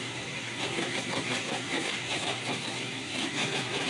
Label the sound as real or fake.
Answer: fake